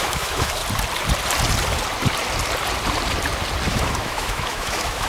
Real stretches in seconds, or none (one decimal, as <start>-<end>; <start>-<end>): 0.6-3.7